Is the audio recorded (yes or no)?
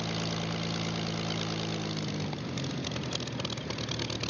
yes